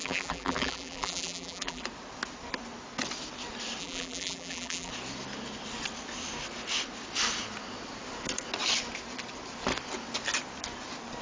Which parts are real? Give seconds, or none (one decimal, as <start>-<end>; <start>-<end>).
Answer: 1.8-3.8; 4.9-11.2